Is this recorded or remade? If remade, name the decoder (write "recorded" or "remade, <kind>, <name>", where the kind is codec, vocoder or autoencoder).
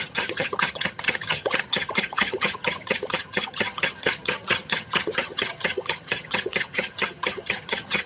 remade, vocoder, HiFi-GAN